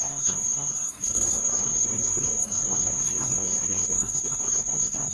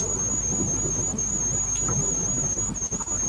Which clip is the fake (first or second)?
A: first